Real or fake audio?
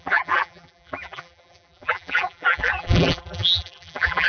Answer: fake